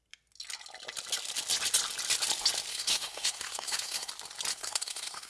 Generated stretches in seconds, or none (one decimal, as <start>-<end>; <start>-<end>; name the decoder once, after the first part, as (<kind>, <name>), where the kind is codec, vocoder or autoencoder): 2.7-4.1 (codec, SNAC); 4.5-5.3